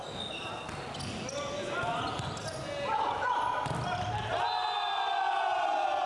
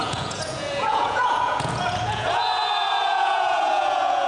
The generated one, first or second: second